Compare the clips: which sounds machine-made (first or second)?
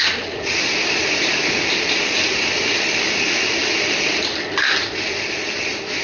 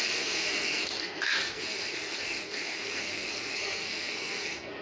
second